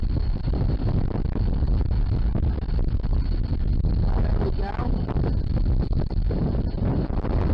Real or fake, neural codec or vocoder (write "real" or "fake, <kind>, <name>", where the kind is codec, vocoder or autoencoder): real